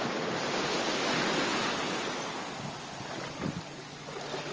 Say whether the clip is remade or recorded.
recorded